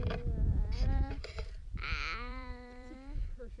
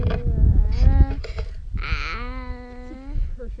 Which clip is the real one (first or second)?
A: second